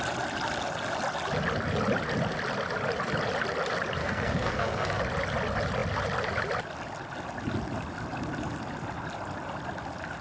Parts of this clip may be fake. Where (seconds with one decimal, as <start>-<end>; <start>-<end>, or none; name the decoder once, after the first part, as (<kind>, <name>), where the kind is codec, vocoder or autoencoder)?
4.0-5.0 (codec, SNAC)